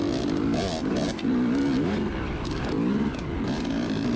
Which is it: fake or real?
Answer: real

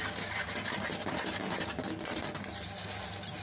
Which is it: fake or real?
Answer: real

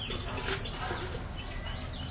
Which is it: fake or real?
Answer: real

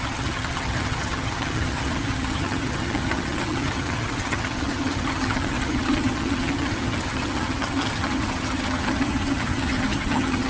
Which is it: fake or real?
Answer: fake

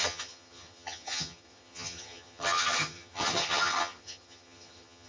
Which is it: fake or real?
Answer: fake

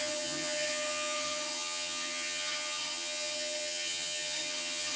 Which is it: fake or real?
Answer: fake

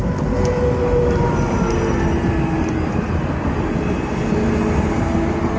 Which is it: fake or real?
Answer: real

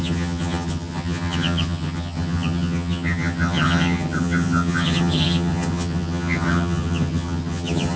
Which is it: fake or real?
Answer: fake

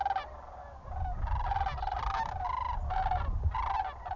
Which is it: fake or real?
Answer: real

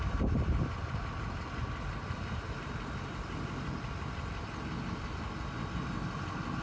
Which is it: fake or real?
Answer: real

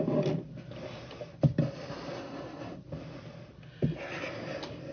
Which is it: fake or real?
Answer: real